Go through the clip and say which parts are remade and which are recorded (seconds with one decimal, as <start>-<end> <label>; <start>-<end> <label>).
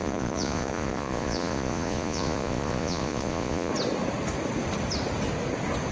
0.0-3.7 remade; 3.7-5.9 recorded